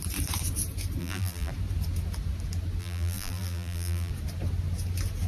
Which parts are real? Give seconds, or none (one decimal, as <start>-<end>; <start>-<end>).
0.0-1.0; 1.5-2.8; 4.1-5.3